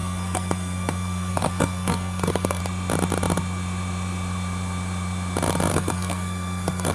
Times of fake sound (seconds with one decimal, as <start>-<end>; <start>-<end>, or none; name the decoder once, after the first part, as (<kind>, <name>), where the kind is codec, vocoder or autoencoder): 0.0-2.6 (codec, SNAC); 5.7-6.9

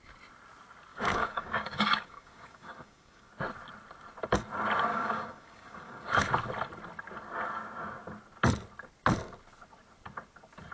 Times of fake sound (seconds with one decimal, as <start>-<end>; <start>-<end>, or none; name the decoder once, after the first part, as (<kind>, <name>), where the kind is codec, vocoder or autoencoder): 0.9-3.3 (codec, DAC); 4.9-6.2

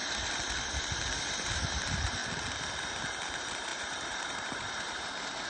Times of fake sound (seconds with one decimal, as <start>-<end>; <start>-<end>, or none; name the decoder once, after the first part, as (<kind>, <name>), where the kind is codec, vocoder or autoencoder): 1.2-2.2 (vocoder, BigVGAN v2); 3.3-5.5

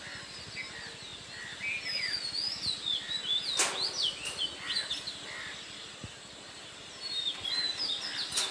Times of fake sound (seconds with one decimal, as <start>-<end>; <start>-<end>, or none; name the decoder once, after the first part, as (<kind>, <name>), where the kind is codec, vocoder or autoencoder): none

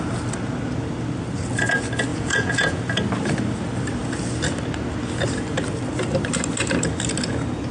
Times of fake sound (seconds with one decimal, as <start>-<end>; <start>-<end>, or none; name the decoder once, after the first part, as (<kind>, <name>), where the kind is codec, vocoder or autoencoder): 2.1-2.8 (vocoder, Vocos)

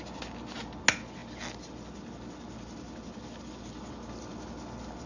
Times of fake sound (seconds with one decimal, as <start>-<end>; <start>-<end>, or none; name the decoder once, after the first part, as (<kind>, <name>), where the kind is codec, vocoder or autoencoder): none

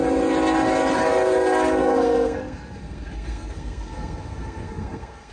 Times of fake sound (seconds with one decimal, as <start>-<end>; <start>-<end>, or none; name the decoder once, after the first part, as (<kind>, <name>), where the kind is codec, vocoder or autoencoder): 1.8-5.3 (codec, SNAC)

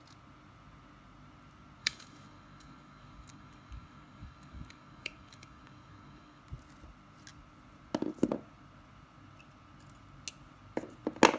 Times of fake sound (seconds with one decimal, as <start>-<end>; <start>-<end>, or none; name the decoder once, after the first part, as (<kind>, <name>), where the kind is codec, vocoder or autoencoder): 1.8-6.4 (codec, DAC)